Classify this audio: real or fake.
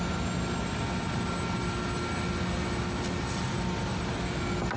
real